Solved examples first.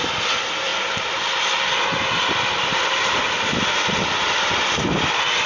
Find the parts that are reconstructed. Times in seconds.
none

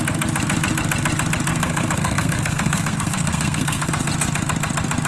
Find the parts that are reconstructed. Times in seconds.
1.5-3.9 (codec, SNAC)